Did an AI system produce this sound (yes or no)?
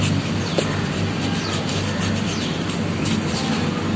no